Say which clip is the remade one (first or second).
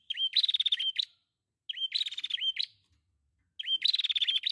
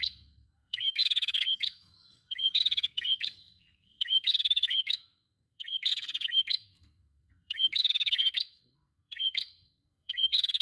second